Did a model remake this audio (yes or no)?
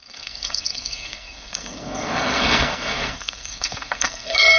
yes